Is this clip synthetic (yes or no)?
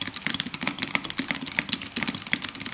no